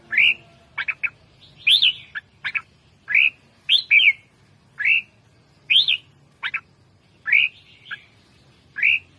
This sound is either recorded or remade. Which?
recorded